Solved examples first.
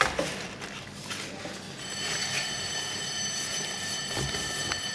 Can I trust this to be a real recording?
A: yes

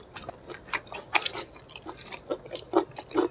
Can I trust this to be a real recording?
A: yes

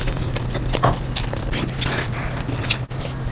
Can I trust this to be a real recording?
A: yes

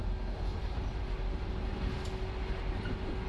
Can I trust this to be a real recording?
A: yes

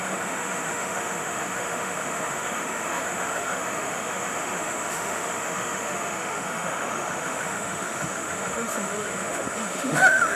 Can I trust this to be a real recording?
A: no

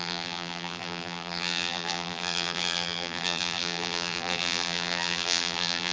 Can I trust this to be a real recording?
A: no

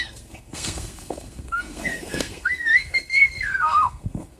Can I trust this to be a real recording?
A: no